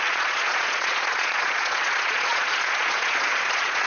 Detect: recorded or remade remade